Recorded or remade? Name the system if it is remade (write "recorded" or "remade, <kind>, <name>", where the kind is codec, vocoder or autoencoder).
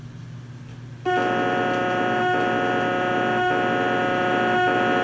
recorded